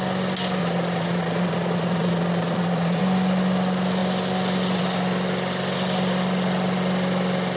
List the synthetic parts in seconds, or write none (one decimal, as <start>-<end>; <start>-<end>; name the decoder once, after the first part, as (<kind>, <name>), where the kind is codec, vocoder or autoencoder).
0.6-3.0 (vocoder, Vocos)